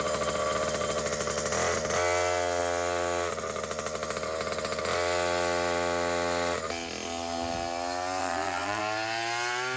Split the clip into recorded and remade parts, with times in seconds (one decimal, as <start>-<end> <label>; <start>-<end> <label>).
0.0-8.2 recorded; 8.2-8.8 remade; 8.8-9.8 recorded